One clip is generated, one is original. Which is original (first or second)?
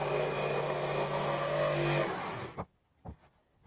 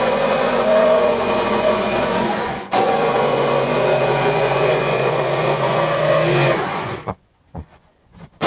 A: first